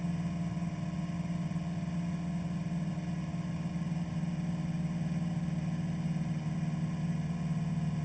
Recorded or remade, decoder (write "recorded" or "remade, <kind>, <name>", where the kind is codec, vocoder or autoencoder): recorded